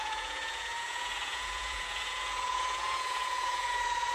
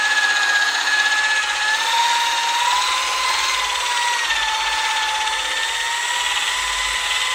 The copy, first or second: first